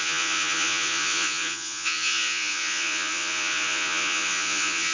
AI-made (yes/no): yes